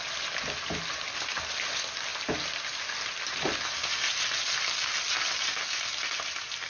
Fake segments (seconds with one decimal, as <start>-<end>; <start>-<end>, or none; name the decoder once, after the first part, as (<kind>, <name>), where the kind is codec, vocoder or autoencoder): none